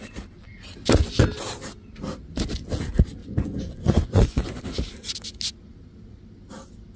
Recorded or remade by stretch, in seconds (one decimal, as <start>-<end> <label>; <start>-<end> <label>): 0.0-3.2 recorded; 3.2-4.6 remade; 4.6-7.0 recorded